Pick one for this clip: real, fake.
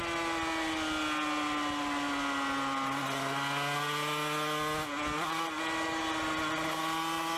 real